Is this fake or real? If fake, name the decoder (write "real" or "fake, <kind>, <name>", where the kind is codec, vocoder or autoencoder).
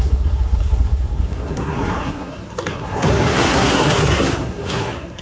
fake, codec, SNAC